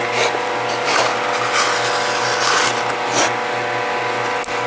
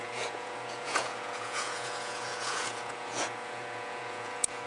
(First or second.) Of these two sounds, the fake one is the second